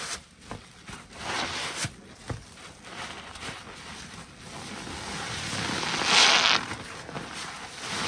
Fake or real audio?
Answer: real